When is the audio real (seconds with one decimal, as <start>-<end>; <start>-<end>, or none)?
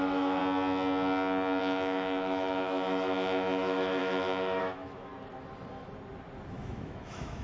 0.4-1.6; 5.1-6.5